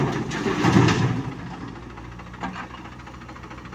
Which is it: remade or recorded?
recorded